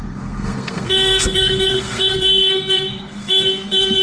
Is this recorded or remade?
remade